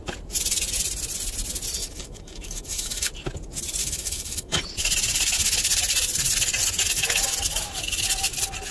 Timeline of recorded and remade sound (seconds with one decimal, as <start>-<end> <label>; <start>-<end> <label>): 0.0-1.8 recorded; 1.8-3.1 remade; 3.1-3.8 recorded; 3.8-4.6 remade; 4.6-8.7 recorded